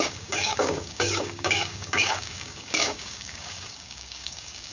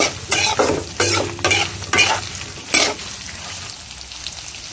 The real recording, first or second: second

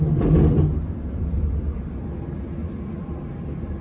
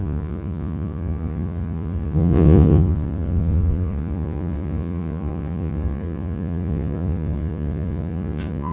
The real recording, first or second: first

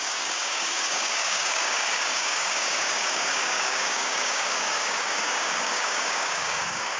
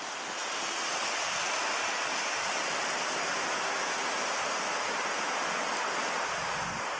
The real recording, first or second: second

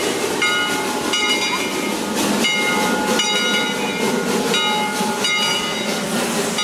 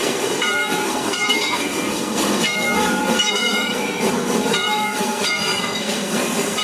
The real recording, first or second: first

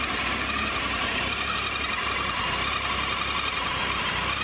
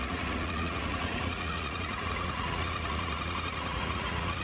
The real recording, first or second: first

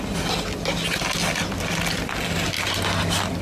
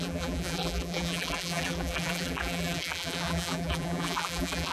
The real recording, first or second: first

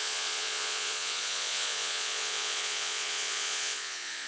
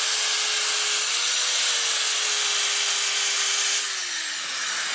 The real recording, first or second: second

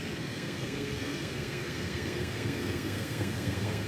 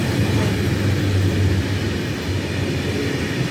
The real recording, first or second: second